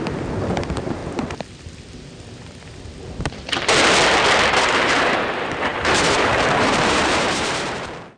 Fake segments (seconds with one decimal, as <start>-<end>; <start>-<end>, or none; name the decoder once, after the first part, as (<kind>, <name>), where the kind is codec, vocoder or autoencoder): 0.0-1.0 (vocoder, BigVGAN v2); 4.6-8.2